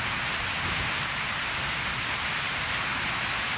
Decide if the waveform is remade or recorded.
recorded